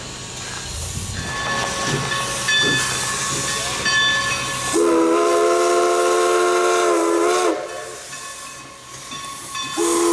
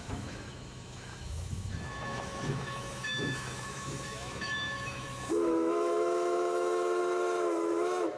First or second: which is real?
first